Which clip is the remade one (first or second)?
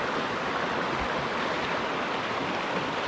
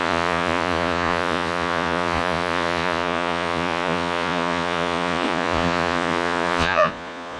second